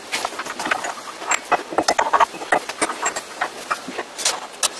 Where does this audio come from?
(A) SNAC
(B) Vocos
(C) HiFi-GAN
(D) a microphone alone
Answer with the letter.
D